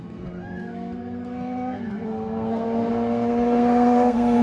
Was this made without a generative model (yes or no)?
no